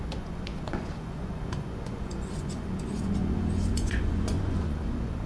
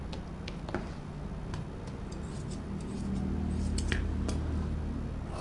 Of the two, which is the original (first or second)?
second